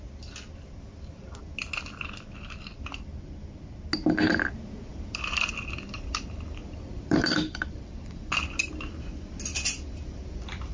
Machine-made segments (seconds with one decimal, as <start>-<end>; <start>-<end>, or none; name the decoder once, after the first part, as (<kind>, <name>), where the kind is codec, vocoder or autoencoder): 4.9-8.6 (vocoder, BigVGAN v2)